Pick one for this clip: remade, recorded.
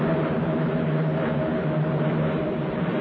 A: remade